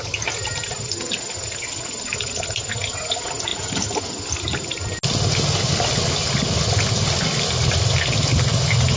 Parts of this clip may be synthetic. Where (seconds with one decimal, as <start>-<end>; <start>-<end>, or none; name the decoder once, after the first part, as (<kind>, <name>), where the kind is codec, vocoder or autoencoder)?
none